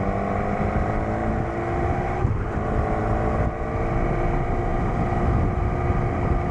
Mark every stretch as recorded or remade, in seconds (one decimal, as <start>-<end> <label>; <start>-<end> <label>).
0.0-6.5 recorded